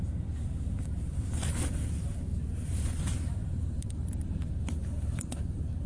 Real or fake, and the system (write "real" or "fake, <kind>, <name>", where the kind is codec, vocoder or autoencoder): fake, vocoder, BigVGAN v2